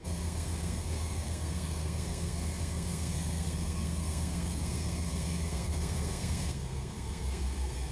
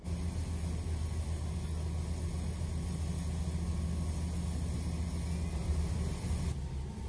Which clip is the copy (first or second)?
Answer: first